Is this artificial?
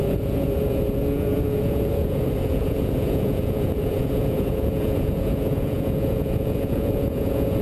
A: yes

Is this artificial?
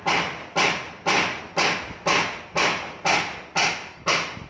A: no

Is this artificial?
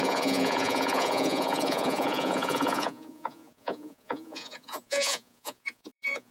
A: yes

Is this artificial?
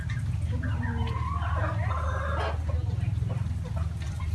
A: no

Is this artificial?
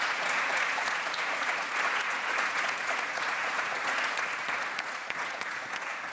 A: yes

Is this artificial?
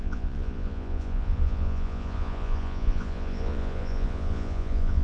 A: yes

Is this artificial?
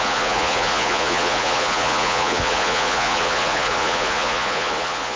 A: yes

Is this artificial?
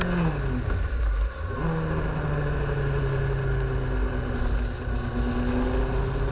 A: no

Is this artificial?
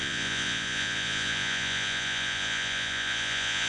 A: yes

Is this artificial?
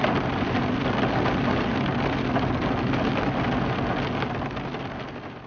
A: no